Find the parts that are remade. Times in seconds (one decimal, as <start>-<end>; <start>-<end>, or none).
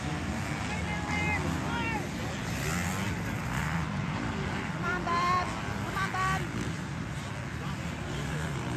3.6-7.2